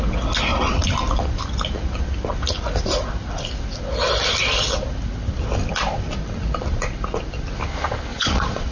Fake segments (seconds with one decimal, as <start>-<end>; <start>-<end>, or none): 8.1-8.7